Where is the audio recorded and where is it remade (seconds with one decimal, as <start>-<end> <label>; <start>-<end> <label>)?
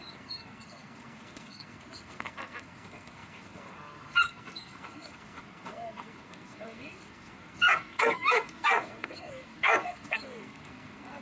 0.0-11.2 remade